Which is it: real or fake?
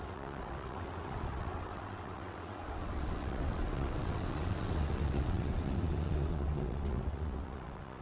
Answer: fake